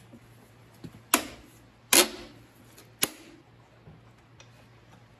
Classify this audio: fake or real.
real